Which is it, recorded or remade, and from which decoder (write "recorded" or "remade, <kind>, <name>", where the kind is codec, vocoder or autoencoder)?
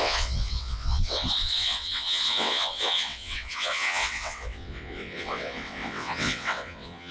remade, vocoder, WaveNeXt